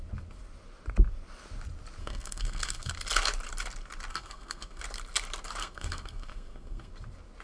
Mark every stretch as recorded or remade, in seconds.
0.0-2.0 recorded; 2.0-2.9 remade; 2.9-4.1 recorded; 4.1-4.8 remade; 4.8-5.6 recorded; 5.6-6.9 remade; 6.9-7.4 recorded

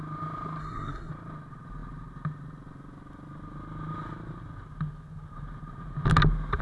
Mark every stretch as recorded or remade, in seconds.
0.0-0.6 recorded; 0.6-1.1 remade; 1.1-6.6 recorded

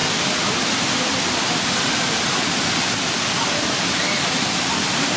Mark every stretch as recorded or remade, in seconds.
0.0-5.2 recorded

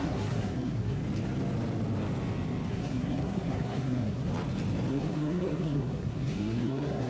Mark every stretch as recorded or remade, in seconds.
0.0-1.0 remade; 1.0-2.7 recorded; 2.7-4.3 remade; 4.3-4.9 recorded; 4.9-7.1 remade

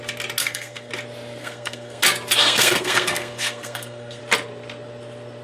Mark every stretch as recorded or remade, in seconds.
0.0-0.4 recorded; 0.4-0.9 remade; 0.9-1.4 recorded; 1.4-2.0 remade; 2.0-2.4 recorded; 2.4-4.2 remade; 4.2-5.4 recorded

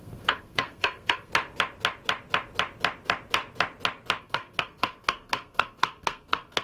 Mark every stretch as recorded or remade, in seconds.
0.0-1.3 remade; 1.3-4.2 recorded; 4.2-6.6 remade